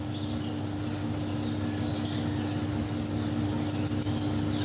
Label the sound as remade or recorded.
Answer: recorded